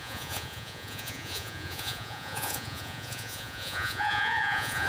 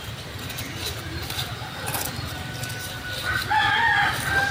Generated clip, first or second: first